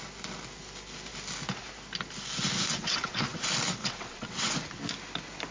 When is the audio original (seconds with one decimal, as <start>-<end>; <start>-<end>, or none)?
0.0-2.7; 3.4-3.8; 4.5-5.5